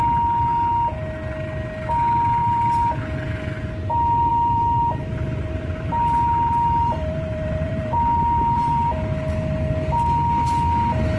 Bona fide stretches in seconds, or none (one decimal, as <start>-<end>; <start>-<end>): 0.0-2.4; 3.0-4.3; 8.9-11.2